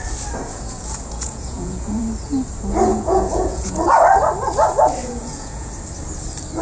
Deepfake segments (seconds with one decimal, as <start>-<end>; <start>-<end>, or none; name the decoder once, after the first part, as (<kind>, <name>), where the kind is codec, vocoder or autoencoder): 0.5-2.0 (vocoder, Vocos); 2.9-3.8; 5.0-5.7